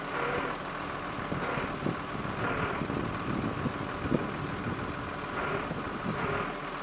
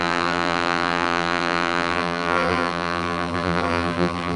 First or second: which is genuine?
first